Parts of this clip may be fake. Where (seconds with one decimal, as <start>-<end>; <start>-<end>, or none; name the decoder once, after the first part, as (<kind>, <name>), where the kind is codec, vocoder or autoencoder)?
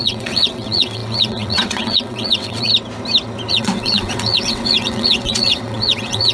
0.0-2.7 (vocoder, WaveNeXt); 3.5-6.3